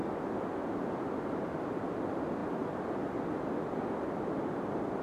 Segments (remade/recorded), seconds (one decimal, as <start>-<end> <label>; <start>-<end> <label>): 0.0-5.0 recorded

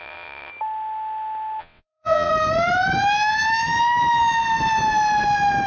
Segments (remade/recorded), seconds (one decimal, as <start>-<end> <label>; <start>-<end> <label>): 0.0-0.5 remade; 0.5-1.6 recorded; 1.6-2.3 remade; 2.3-5.7 recorded

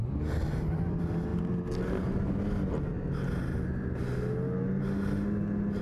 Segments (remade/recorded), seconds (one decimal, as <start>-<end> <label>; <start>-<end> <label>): 0.0-5.8 recorded